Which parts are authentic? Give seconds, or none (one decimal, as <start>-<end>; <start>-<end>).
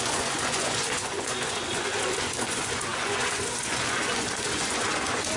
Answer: none